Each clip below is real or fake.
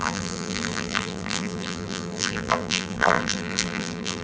fake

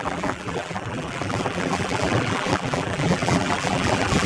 fake